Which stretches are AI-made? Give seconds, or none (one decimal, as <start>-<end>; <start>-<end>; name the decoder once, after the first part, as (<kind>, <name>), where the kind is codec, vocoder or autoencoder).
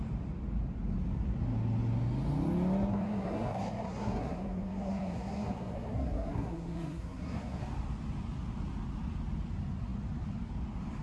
2.9-7.6 (codec, SNAC)